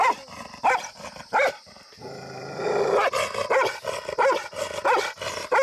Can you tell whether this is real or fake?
real